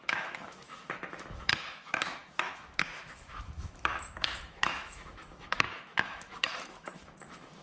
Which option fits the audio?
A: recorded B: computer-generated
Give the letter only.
B